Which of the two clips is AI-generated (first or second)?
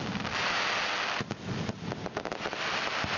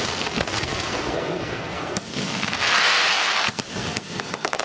second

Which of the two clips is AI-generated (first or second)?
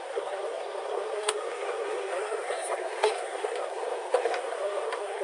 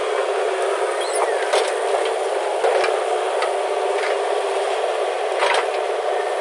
first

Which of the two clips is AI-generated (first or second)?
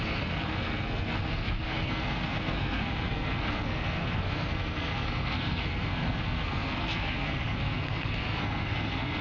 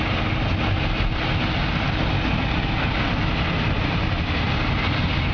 first